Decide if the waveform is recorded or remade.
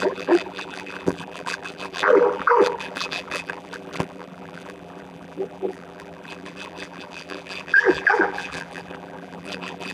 remade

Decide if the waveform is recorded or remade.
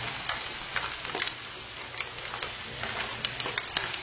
recorded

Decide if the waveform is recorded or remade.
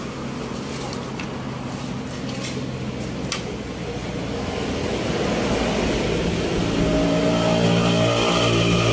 recorded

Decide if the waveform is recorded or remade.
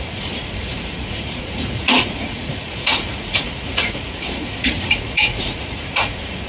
remade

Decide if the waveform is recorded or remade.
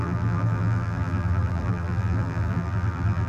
remade